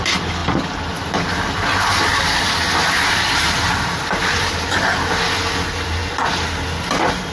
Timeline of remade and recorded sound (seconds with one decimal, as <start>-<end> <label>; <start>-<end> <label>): 0.0-7.3 recorded